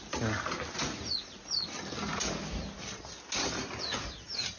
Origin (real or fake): real